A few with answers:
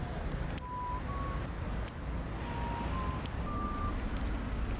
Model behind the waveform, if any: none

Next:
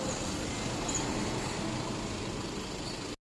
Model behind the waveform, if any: none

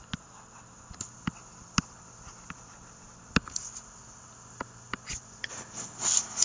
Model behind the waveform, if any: none